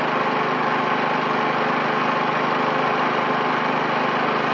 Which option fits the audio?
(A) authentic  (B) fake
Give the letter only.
A